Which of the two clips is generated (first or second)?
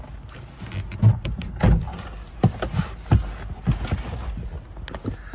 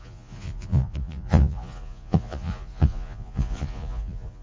second